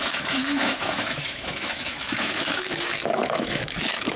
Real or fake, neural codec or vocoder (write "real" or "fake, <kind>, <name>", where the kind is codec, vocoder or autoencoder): fake, autoencoder, DAC-VAE